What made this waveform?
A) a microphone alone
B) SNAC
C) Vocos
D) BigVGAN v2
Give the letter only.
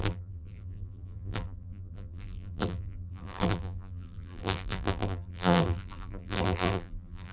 D